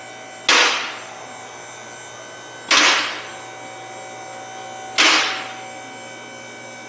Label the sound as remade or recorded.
recorded